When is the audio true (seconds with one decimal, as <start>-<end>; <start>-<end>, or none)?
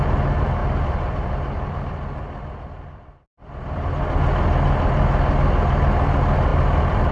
0.0-0.6; 4.2-6.5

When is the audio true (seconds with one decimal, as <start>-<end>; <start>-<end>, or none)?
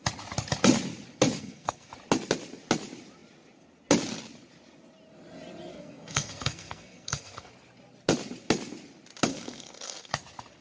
0.0-1.4; 1.9-5.7; 7.5-9.3; 10.1-10.6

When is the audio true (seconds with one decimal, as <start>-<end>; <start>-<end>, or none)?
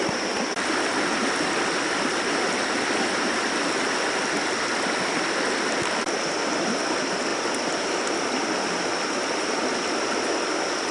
0.0-10.9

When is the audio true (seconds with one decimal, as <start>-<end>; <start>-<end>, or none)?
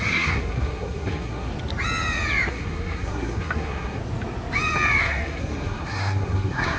1.5-2.5; 4.0-5.0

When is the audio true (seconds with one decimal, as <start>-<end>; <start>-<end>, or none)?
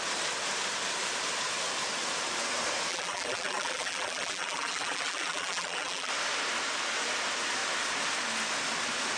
0.0-2.9; 6.1-9.2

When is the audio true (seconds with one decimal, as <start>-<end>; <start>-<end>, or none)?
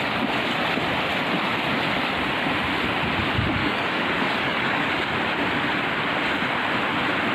0.0-3.6; 4.9-7.3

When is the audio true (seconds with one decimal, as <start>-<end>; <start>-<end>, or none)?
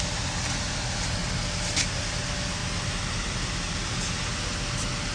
0.0-5.1